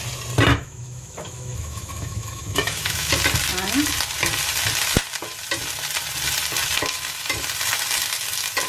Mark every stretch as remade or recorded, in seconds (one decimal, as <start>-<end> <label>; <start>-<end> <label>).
0.0-0.5 recorded; 0.5-3.1 remade; 3.1-8.7 recorded

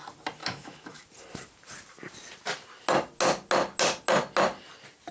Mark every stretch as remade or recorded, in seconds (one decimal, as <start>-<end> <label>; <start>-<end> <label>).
0.0-0.4 recorded; 0.4-1.0 remade; 1.0-5.1 recorded

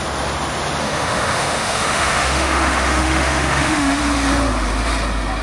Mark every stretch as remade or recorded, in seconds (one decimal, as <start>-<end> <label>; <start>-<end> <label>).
0.0-0.8 recorded; 0.8-4.0 remade; 4.0-5.4 recorded